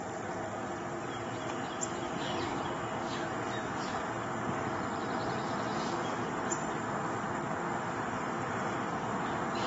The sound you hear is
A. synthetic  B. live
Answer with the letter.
B